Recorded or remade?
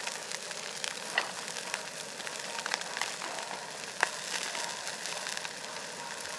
recorded